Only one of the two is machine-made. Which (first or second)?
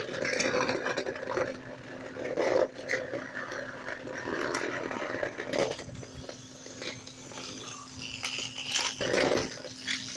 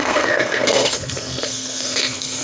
second